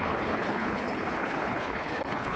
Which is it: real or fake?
fake